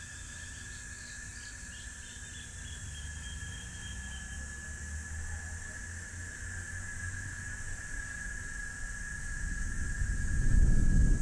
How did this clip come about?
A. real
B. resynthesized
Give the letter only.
A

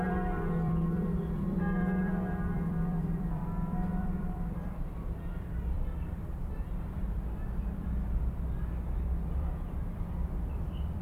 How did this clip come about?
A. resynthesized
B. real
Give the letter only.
A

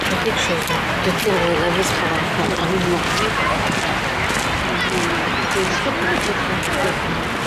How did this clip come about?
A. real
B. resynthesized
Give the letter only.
A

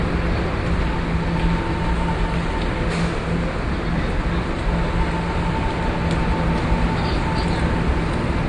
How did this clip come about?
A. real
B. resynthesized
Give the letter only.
A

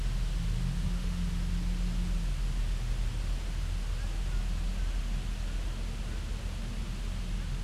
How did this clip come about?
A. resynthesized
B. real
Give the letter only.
B